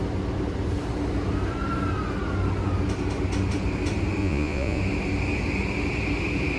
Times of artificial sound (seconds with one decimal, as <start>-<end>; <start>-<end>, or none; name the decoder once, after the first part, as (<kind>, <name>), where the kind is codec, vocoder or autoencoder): 4.2-4.8 (vocoder, Vocos)